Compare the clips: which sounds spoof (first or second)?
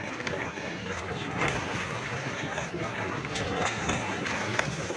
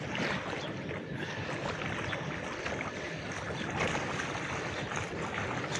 first